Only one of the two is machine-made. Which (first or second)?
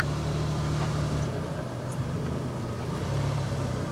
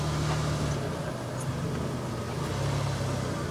first